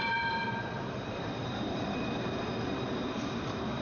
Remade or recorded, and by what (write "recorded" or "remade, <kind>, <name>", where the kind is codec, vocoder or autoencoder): remade, vocoder, BigVGAN v2